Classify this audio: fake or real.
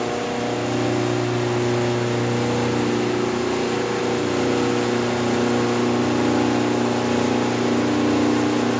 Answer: real